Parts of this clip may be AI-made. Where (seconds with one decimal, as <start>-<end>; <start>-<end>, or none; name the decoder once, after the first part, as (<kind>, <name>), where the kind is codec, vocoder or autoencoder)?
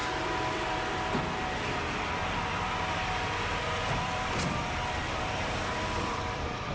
2.5-6.7 (vocoder, BigVGAN v2)